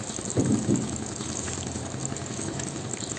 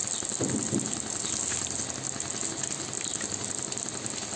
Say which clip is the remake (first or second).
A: first